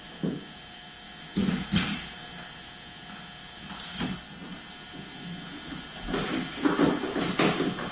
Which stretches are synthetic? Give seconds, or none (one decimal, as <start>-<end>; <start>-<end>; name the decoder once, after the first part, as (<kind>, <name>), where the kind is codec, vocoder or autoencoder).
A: none